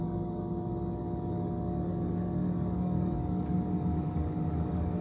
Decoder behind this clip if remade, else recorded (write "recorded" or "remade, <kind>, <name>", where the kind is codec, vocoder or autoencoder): remade, codec, DAC